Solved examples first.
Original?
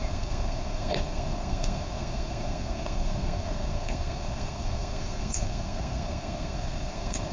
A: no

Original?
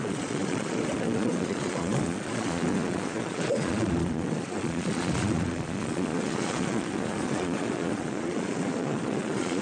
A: no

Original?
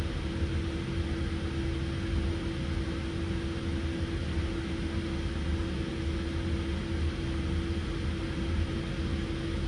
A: yes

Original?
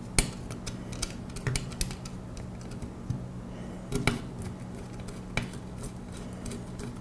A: yes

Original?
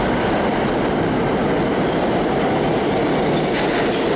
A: yes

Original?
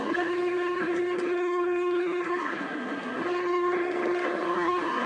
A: no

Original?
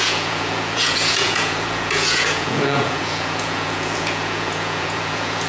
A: no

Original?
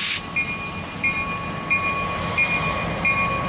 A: yes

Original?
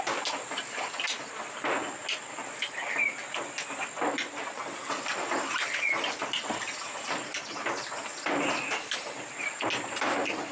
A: yes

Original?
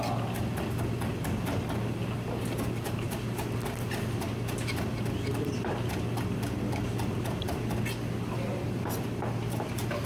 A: no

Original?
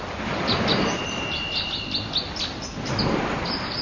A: yes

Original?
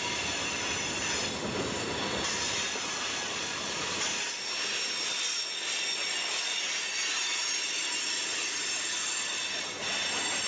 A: yes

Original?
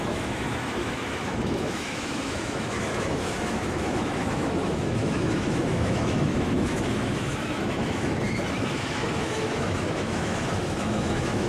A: no